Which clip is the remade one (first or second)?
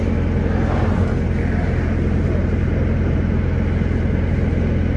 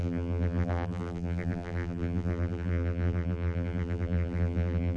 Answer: second